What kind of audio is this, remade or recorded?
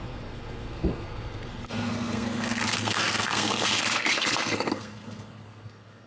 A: remade